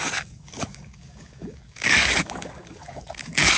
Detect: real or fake fake